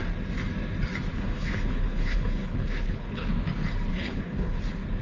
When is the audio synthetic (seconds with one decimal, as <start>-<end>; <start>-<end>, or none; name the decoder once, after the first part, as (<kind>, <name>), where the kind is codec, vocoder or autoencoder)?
1.1-3.3 (codec, HILCodec); 3.9-4.6